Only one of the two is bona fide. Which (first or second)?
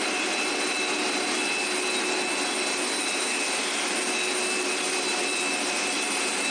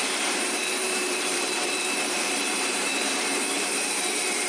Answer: first